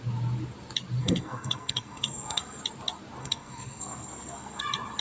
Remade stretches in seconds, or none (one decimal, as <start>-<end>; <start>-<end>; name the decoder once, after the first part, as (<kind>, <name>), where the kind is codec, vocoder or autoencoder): 1.0-2.6 (codec, SNAC); 3.2-4.6